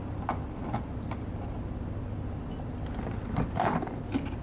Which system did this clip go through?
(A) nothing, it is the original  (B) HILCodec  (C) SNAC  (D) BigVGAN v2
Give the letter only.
A